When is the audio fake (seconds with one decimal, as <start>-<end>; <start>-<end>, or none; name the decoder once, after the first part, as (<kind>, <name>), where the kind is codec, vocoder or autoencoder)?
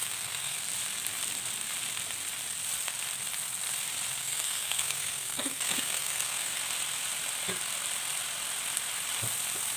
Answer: 0.0-0.6 (codec, SNAC); 4.2-6.6